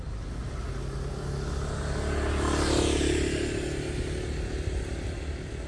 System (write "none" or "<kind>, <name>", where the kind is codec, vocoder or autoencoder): none